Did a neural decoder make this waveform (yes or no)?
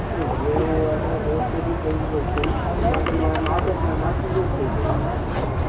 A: no